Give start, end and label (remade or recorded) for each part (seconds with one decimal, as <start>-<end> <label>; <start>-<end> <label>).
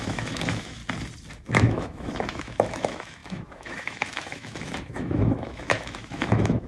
0.0-0.8 remade; 0.8-1.3 recorded; 1.3-6.7 remade